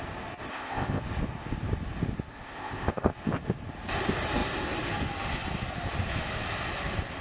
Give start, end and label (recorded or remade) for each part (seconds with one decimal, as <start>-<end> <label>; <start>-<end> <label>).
0.0-0.5 recorded; 0.5-1.0 remade; 1.0-2.3 recorded; 2.3-3.1 remade; 3.1-7.2 recorded